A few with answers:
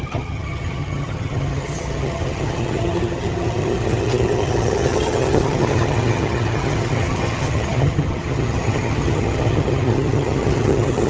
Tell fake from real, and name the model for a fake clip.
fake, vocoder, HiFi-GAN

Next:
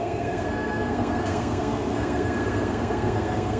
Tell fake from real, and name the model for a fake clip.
fake, codec, SNAC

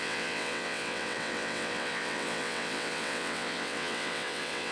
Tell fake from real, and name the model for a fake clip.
fake, vocoder, WaveNeXt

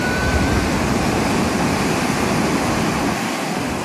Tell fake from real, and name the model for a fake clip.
real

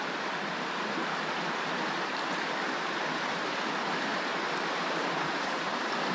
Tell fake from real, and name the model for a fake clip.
fake, vocoder, BigVGAN v2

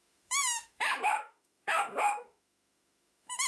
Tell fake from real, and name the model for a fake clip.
fake, autoencoder, DAC-VAE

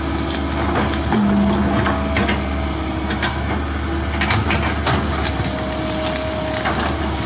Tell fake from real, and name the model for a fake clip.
real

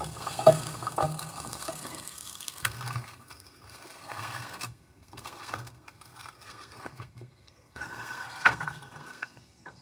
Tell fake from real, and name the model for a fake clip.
fake, codec, SNAC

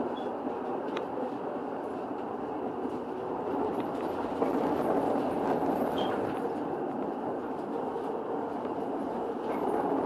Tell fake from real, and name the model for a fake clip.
fake, vocoder, BigVGAN v2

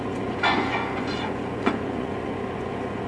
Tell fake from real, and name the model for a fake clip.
fake, vocoder, Vocos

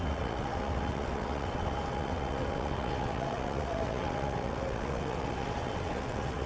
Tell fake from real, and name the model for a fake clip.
fake, vocoder, WaveNeXt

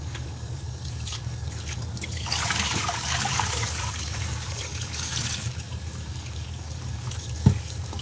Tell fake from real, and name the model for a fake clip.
fake, codec, DAC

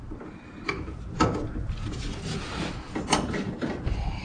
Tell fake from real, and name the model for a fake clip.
real